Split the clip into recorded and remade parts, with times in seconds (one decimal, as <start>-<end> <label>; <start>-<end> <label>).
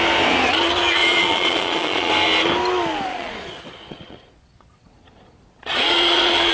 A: 0.0-1.0 recorded; 1.0-2.1 remade; 2.1-3.1 recorded; 3.1-6.5 remade